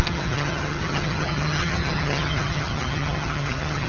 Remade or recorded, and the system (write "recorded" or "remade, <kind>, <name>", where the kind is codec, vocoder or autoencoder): remade, vocoder, HiFi-GAN